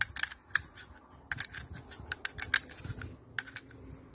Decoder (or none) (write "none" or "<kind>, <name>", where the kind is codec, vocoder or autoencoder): none